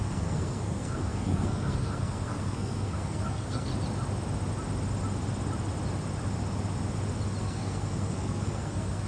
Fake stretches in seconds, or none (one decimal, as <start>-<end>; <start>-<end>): 0.0-3.7; 7.4-9.1